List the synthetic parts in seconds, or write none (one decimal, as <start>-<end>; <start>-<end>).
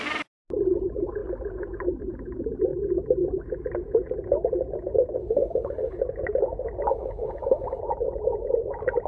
5.2-6.0; 6.9-7.8